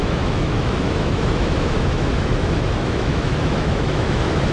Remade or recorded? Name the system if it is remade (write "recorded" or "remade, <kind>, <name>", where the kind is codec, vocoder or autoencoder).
remade, autoencoder, DAC-VAE